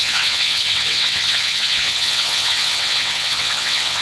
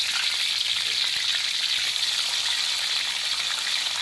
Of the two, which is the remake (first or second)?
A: first